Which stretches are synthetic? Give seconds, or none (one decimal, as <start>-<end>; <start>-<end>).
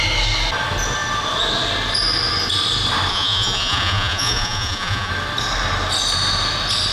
3.1-5.1